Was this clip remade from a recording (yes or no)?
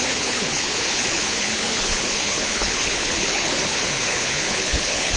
yes